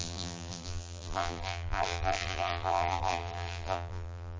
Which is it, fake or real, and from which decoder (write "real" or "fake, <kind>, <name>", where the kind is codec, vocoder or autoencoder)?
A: fake, vocoder, BigVGAN v2